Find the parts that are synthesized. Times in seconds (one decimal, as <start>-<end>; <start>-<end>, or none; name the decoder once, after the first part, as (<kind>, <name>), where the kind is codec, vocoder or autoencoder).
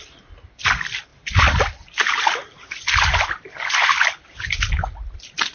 none